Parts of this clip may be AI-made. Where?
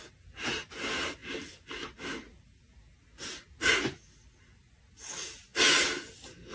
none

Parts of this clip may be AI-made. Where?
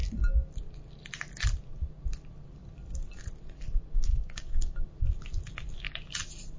4.1-4.8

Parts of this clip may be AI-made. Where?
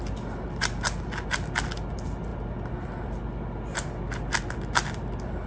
none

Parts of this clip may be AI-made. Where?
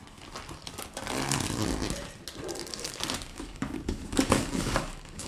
3.3-5.3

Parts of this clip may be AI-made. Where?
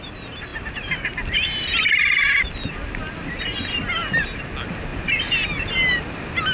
none